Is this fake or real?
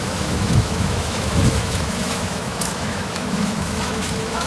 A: fake